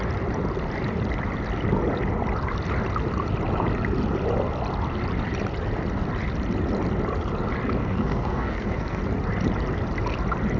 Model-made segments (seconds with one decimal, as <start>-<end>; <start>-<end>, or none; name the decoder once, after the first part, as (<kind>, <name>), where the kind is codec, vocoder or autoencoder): 7.8-9.0 (codec, SNAC)